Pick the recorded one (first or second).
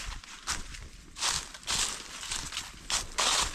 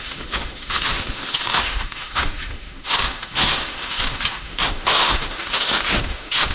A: first